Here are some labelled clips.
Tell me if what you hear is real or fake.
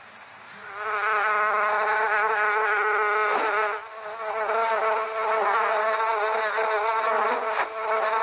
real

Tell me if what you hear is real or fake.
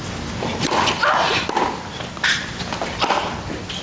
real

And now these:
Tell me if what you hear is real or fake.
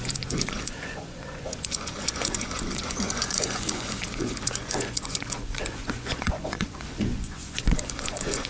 fake